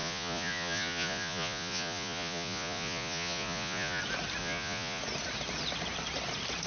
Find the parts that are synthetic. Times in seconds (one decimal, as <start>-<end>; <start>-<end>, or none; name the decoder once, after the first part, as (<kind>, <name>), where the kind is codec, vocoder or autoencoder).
0.0-4.0 (vocoder, Vocos); 4.4-5.0